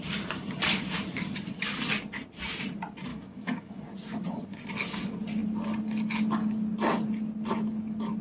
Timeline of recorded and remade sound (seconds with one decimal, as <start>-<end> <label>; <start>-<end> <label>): 0.0-3.1 recorded; 3.1-3.8 remade; 3.8-8.2 recorded